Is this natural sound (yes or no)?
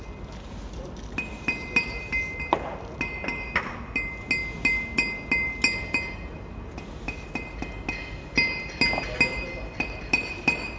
yes